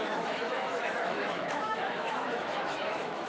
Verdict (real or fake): fake